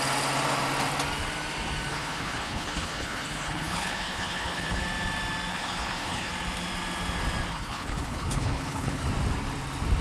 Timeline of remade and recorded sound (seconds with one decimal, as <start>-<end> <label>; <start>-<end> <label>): 0.0-1.9 recorded; 1.9-4.8 remade; 4.8-5.5 recorded; 5.5-6.3 remade; 6.3-7.5 recorded; 7.5-9.0 remade; 9.0-10.0 recorded